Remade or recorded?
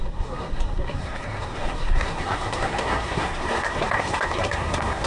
remade